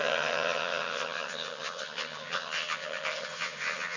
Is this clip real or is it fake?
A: fake